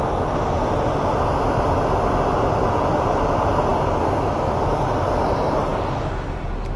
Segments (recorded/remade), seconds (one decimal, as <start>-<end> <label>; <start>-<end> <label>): 0.0-6.8 recorded